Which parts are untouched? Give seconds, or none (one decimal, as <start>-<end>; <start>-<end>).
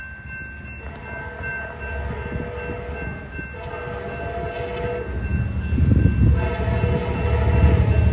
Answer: 0.0-8.1